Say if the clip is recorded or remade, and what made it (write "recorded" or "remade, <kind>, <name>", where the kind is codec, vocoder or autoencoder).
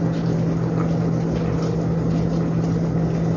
recorded